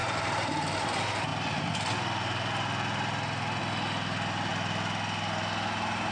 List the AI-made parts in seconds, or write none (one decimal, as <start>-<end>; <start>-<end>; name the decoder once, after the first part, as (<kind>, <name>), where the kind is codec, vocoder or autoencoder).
0.0-0.5 (vocoder, BigVGAN v2)